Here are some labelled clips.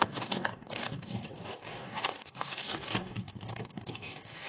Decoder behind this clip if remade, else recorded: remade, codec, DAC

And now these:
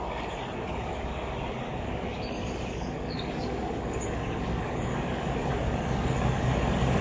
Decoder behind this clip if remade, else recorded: remade, codec, DAC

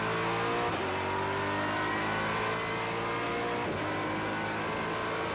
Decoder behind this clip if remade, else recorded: recorded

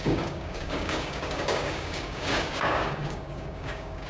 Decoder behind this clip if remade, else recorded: remade, codec, DAC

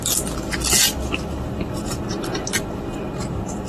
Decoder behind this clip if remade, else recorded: recorded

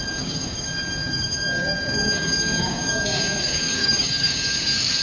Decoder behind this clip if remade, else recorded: remade, codec, DAC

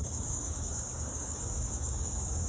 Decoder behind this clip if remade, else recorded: remade, codec, DAC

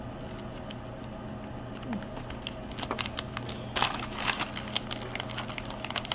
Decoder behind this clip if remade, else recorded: recorded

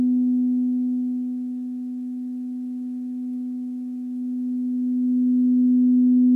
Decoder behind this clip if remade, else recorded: recorded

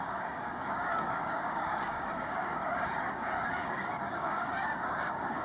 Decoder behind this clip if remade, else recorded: remade, codec, DAC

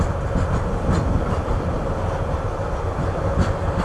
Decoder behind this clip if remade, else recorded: recorded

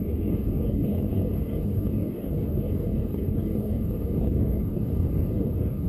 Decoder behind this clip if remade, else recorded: remade, codec, DAC